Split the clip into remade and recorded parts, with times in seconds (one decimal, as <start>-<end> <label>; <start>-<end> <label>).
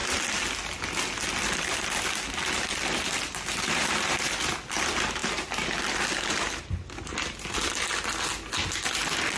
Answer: 0.0-9.4 recorded